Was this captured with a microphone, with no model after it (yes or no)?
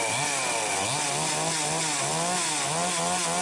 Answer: yes